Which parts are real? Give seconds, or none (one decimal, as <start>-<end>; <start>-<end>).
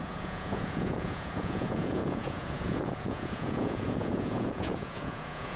none